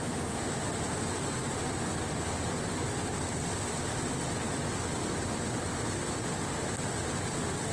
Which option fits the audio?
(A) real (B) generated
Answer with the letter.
A